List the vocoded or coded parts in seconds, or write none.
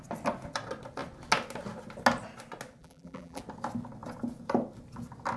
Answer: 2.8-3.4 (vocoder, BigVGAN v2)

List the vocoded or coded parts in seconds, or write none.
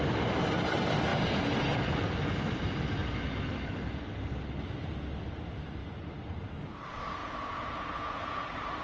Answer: 7.2-8.4 (vocoder, Vocos)